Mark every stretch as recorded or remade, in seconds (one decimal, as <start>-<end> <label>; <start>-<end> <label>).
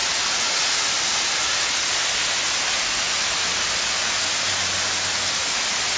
0.0-6.0 recorded